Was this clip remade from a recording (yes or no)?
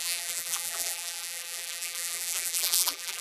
yes